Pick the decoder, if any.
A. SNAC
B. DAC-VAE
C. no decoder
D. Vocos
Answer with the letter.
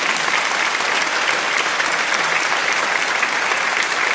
C